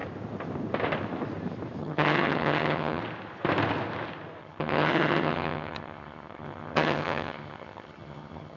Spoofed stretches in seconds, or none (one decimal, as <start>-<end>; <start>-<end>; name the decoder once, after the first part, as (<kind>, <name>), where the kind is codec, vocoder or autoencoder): 1.8-3.0 (vocoder, HiFi-GAN); 4.4-8.6